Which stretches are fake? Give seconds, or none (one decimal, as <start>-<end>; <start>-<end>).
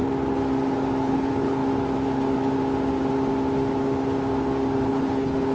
1.0-1.6; 4.9-5.5